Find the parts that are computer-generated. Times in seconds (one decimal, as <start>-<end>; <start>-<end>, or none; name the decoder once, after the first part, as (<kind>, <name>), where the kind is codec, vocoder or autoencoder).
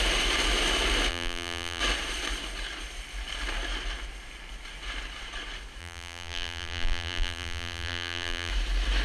1.1-1.8 (vocoder, BigVGAN v2); 5.8-8.5